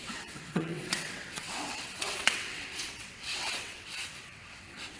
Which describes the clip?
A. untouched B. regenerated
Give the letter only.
B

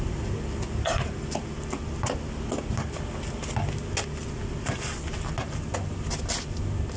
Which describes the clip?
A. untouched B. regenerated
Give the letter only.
A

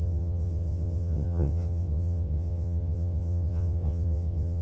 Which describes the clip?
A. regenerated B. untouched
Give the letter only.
A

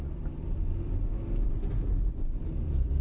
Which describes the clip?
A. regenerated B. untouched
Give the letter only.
B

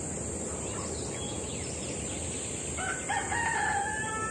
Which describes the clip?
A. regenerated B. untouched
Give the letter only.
B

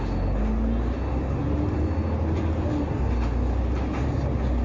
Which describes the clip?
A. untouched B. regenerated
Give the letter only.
A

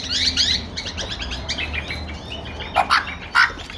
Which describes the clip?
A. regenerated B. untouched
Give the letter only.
B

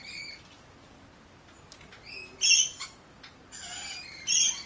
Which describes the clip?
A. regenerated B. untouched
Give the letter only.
B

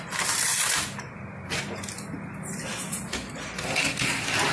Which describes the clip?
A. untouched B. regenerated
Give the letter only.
A